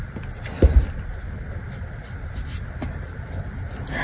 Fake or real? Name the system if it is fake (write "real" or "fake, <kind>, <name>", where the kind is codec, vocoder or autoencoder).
real